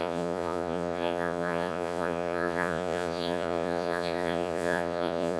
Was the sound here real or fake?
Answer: fake